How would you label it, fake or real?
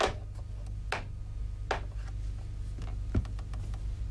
real